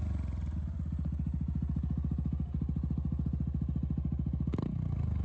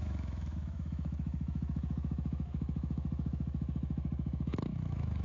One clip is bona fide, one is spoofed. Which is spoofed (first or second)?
second